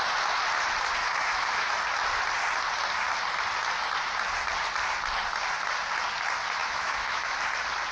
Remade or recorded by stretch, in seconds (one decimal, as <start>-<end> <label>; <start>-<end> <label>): 0.0-1.0 recorded; 1.0-1.7 remade; 1.7-6.6 recorded; 6.6-7.4 remade; 7.4-7.9 recorded